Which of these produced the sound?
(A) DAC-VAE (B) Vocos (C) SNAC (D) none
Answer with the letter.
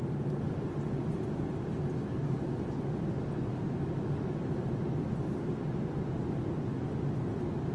D